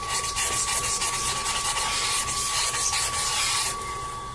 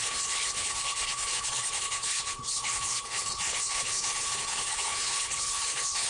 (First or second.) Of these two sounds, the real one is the first